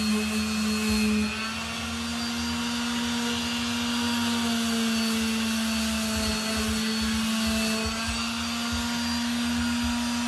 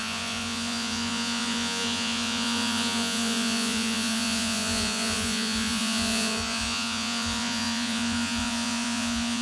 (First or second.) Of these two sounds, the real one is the first